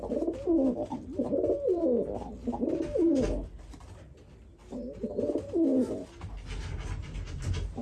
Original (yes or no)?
yes